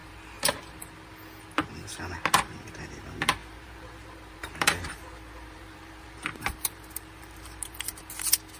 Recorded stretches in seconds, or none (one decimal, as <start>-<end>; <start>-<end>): 0.8-3.4; 8.0-8.6